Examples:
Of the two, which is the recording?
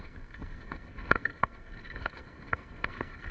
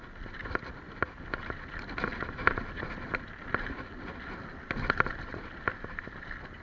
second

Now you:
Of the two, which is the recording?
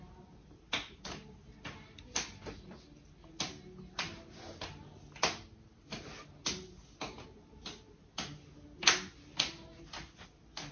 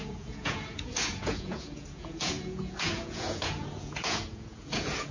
first